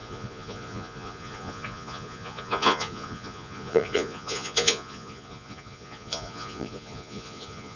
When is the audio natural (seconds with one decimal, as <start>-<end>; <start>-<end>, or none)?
none

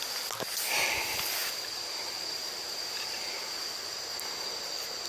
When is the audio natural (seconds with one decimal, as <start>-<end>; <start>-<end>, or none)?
0.0-5.1

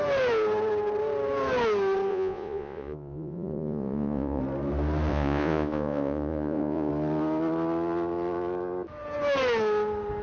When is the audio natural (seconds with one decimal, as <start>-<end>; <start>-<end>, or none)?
0.0-2.1; 4.4-5.1; 6.9-10.2

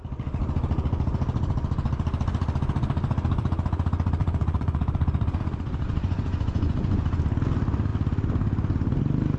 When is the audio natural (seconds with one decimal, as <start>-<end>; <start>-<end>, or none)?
0.0-4.2; 7.2-9.4